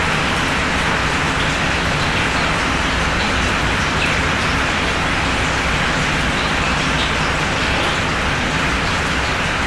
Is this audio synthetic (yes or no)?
no